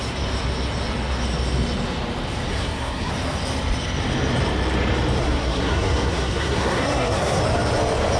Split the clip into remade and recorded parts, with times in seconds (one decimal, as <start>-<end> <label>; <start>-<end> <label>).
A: 0.0-2.5 recorded; 2.5-3.1 remade; 3.1-5.2 recorded; 5.2-7.4 remade; 7.4-8.2 recorded